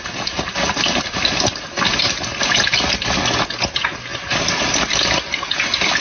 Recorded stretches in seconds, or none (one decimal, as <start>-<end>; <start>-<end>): 0.0-6.0